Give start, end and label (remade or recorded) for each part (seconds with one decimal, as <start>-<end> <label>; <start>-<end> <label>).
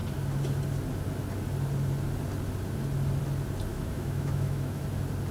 0.0-3.7 recorded; 3.7-4.8 remade; 4.8-5.3 recorded